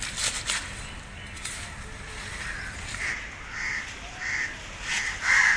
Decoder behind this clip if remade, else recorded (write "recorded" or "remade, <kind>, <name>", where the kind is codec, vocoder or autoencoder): recorded